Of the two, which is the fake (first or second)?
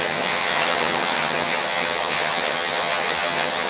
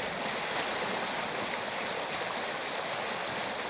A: first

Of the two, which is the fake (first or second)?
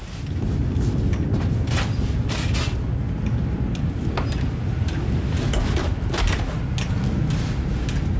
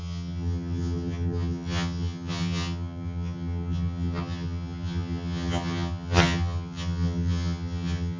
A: second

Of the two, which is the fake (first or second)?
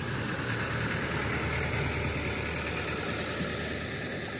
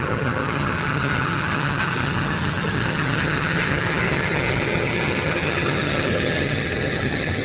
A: second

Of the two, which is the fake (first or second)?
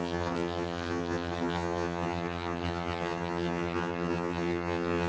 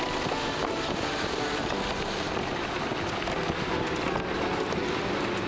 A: first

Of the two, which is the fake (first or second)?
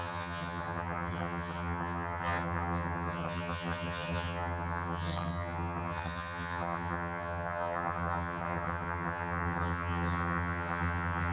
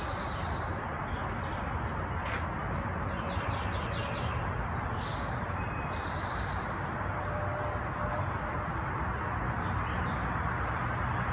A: first